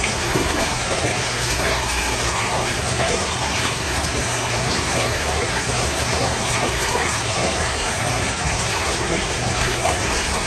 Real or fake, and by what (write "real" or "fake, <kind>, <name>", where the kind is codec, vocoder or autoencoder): fake, codec, SNAC